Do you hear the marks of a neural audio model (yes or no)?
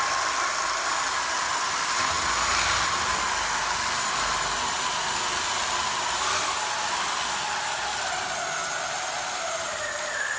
no